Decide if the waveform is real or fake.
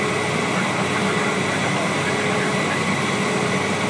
real